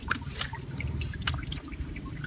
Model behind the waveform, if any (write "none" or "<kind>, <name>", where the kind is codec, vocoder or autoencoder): none